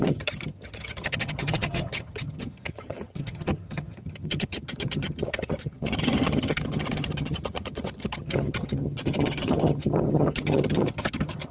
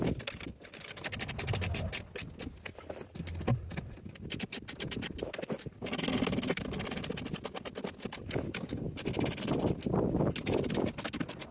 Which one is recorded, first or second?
second